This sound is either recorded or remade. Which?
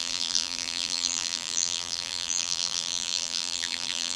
remade